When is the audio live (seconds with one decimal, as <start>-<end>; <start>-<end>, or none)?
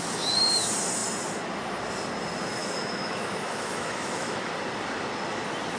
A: 0.0-2.6; 4.5-5.8